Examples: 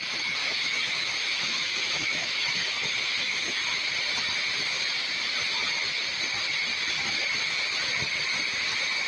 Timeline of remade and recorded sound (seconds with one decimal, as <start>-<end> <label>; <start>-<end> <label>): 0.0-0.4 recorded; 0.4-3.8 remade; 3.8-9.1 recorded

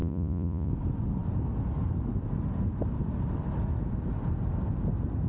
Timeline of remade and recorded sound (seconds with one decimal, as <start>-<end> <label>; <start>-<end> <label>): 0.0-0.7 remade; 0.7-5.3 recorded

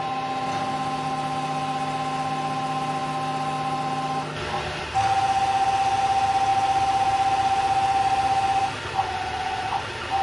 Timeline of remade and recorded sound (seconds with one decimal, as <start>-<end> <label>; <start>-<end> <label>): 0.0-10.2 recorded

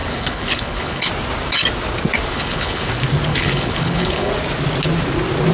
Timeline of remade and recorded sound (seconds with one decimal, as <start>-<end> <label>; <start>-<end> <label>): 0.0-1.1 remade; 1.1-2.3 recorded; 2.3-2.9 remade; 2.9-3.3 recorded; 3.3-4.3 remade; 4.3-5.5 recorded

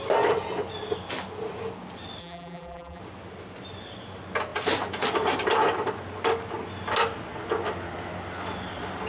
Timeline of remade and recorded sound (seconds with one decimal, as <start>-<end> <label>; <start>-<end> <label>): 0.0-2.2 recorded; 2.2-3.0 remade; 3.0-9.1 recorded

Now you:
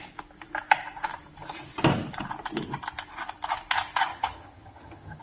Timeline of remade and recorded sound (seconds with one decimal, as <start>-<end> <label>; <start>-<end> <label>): 0.0-4.1 recorded; 4.1-5.2 remade

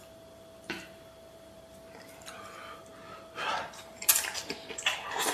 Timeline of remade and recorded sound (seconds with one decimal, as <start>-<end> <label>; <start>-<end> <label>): 0.0-2.9 remade; 2.9-3.5 recorded; 3.5-5.3 remade